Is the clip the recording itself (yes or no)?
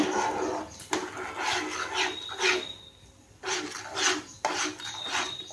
yes